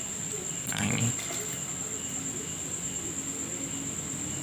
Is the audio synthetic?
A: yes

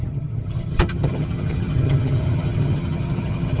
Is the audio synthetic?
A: yes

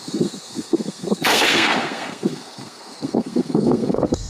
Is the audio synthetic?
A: yes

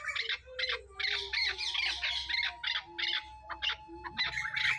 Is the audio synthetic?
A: no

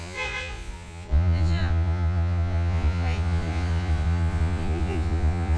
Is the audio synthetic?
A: yes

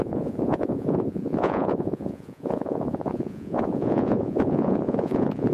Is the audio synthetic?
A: yes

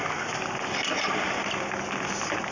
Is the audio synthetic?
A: no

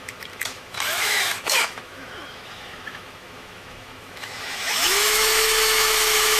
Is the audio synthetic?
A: yes